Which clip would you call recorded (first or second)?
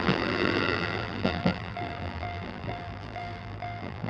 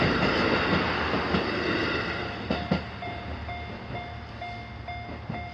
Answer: second